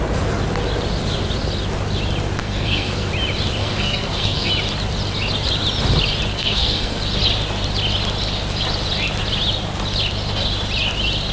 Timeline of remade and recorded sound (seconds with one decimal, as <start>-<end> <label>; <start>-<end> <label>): 0.0-2.4 recorded; 2.4-3.1 remade; 3.1-3.6 recorded; 3.6-4.5 remade; 4.5-6.3 recorded; 6.3-7.0 remade; 7.0-11.3 recorded